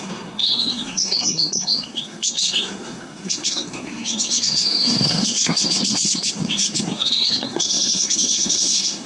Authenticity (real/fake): fake